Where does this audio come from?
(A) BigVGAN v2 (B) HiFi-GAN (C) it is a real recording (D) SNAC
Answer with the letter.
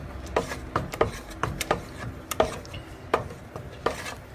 C